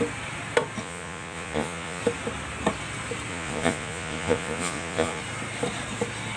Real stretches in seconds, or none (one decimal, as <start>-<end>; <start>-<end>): 0.0-0.8; 2.0-3.3; 5.2-6.4

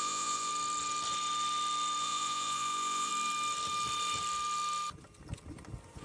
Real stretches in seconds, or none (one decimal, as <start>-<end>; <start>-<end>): 0.5-2.0; 3.1-6.0

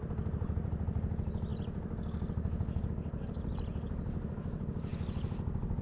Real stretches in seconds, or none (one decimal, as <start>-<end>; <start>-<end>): 0.0-5.8